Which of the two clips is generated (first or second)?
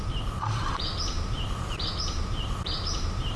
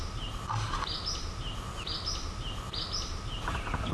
first